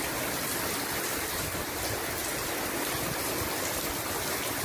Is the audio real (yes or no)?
yes